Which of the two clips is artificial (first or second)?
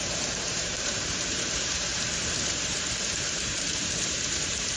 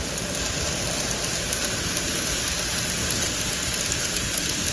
first